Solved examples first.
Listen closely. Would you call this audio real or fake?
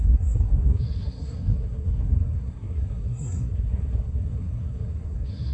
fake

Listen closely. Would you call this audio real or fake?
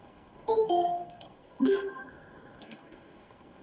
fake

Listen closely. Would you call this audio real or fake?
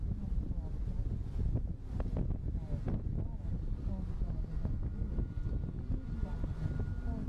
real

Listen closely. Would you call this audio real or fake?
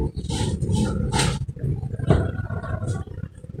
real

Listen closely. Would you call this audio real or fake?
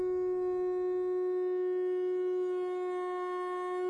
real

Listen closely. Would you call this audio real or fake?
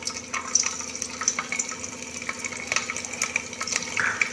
real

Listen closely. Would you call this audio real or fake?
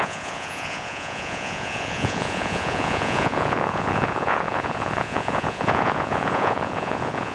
fake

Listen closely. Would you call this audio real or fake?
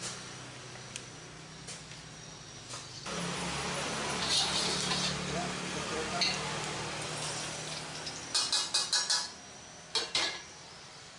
real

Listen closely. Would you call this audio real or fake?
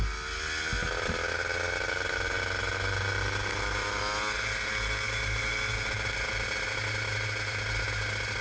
real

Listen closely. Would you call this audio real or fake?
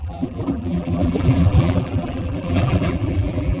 fake